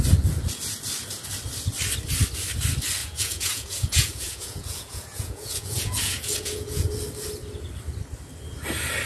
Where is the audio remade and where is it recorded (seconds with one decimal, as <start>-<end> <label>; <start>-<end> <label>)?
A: 0.0-3.0 recorded; 3.0-6.9 remade; 6.9-9.1 recorded